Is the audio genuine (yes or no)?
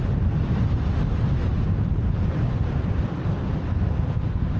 yes